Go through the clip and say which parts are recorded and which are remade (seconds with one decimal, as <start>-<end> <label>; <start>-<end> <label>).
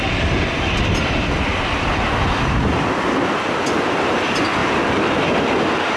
0.0-6.0 recorded